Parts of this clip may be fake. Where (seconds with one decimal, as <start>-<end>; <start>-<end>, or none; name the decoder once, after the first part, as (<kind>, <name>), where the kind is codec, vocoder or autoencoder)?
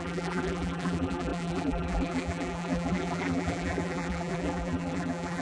0.0-5.4 (vocoder, BigVGAN v2)